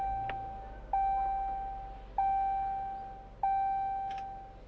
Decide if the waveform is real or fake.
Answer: real